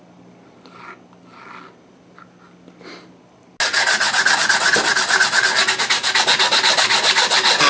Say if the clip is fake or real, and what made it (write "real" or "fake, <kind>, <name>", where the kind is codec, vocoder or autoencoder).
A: real